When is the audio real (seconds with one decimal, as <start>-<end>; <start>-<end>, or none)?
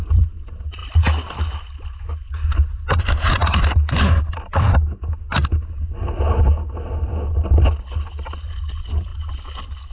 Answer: 0.0-9.9